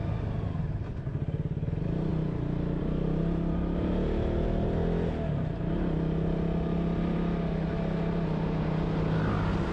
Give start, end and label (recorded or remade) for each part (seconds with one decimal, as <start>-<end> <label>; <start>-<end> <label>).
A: 0.0-9.7 recorded